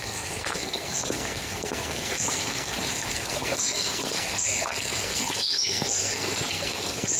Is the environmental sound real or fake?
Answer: fake